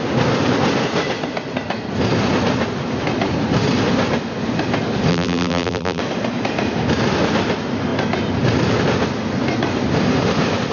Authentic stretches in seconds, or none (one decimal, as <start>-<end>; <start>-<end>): 0.0-5.1; 6.0-10.7